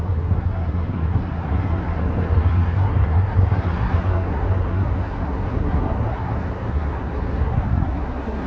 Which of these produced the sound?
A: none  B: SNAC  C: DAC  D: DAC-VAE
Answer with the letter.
B